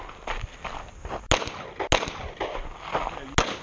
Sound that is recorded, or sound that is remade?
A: recorded